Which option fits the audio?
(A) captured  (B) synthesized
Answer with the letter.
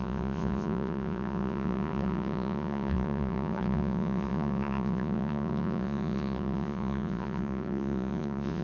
B